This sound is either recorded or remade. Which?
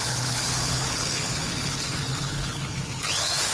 remade